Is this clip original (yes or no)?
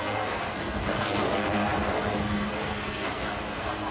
no